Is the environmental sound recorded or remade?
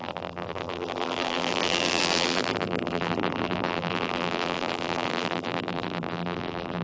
remade